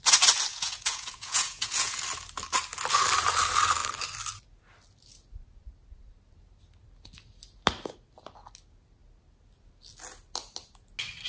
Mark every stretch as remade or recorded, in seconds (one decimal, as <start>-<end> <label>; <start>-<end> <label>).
0.0-0.5 recorded; 0.5-2.0 remade; 2.0-11.3 recorded